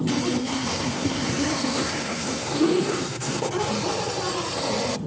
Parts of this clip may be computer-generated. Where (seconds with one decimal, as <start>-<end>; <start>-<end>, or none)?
0.4-3.5